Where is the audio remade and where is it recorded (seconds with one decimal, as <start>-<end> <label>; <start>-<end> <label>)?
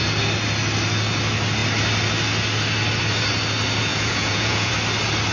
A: 0.0-3.9 recorded; 3.9-4.7 remade; 4.7-5.3 recorded